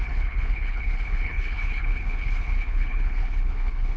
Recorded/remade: remade